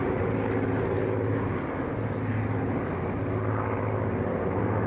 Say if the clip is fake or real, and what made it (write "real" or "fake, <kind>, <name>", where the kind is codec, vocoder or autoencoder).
real